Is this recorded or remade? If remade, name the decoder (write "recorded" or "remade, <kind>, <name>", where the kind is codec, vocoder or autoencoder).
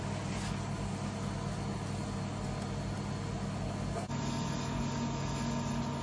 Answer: recorded